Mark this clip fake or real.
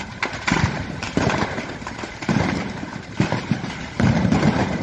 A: fake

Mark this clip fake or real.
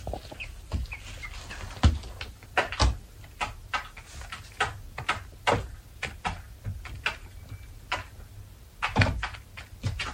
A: real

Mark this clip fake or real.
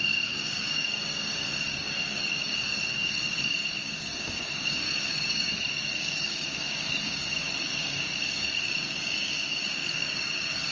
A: fake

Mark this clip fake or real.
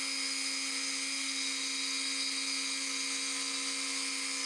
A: real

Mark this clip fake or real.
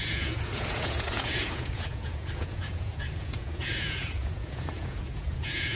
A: fake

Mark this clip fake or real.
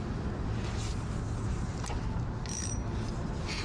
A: real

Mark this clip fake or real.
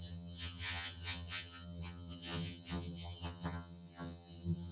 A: fake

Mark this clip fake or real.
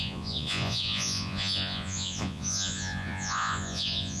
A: fake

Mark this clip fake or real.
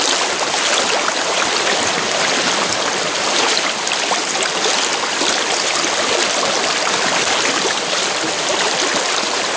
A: real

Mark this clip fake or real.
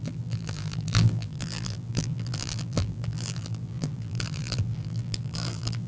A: fake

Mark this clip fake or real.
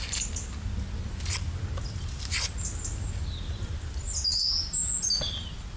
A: real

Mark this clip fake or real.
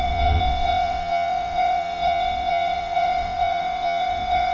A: fake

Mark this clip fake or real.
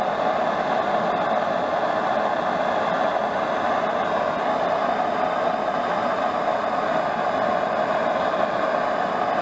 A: real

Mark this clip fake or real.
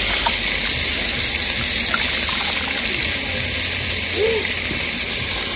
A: real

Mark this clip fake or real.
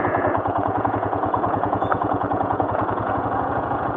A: fake